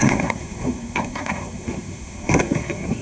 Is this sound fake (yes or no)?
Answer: yes